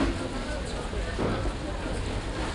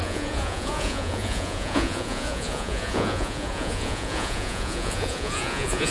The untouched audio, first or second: first